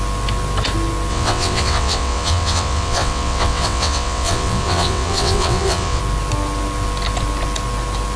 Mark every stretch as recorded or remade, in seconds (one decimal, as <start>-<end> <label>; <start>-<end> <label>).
0.0-1.1 recorded; 1.1-6.0 remade; 6.0-8.2 recorded

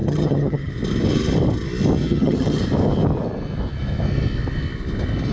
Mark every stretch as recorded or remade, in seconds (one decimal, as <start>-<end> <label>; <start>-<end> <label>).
0.0-0.7 remade; 0.7-2.0 recorded; 2.0-2.6 remade; 2.6-5.3 recorded

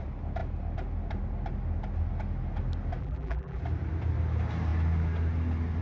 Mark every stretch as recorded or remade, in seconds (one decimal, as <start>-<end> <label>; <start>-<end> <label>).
0.0-3.0 recorded; 3.0-3.6 remade; 3.6-5.8 recorded

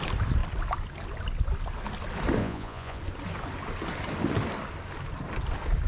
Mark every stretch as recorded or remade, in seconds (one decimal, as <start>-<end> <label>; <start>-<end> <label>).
0.0-2.4 recorded; 2.4-3.0 remade; 3.0-5.9 recorded